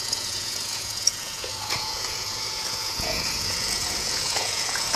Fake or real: fake